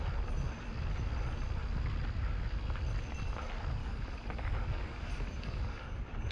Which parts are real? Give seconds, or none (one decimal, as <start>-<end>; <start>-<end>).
0.0-3.8